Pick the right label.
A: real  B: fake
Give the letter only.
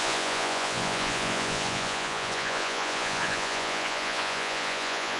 B